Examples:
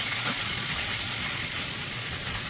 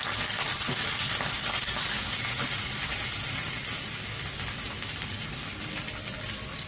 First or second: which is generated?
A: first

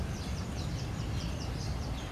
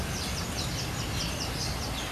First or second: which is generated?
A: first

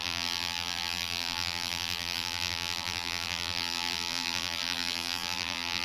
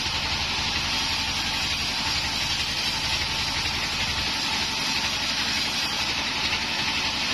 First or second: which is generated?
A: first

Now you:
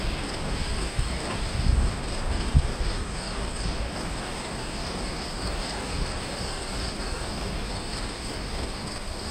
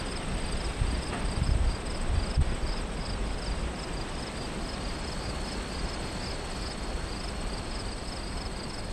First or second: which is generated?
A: first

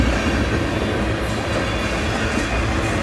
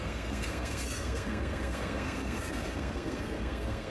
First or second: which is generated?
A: second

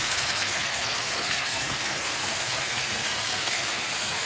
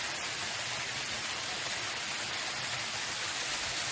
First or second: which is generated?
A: first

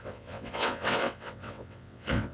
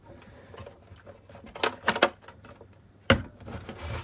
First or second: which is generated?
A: first